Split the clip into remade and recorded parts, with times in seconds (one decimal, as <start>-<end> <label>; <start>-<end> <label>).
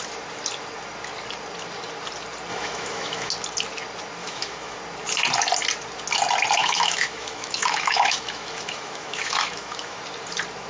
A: 0.0-2.5 recorded; 2.5-3.3 remade; 3.3-4.2 recorded; 4.2-4.8 remade; 4.8-6.6 recorded; 6.6-10.0 remade; 10.0-10.7 recorded